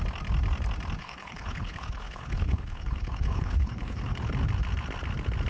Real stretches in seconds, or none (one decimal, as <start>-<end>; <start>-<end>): 0.0-1.0; 4.3-5.5